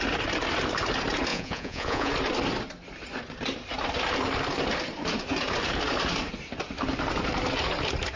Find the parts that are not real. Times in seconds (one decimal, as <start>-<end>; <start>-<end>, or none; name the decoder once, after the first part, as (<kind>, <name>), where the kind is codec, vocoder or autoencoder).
1.3-2.1 (vocoder, Vocos)